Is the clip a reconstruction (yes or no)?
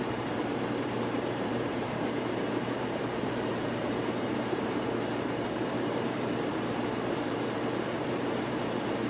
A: yes